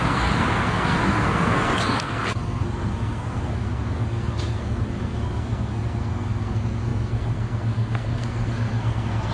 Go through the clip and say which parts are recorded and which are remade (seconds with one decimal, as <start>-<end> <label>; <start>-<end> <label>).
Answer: 0.0-9.3 remade